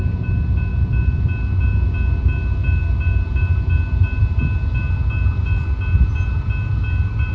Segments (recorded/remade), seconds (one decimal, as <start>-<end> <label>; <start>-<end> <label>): 0.0-7.3 recorded